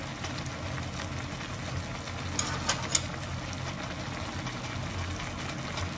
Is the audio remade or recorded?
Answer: recorded